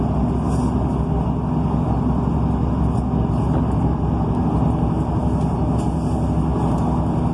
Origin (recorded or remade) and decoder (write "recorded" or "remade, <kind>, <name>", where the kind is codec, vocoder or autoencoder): recorded